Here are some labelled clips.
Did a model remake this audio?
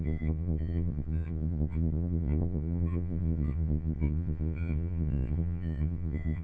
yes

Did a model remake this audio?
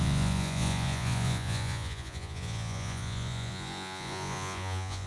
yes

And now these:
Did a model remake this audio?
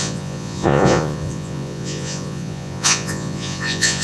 yes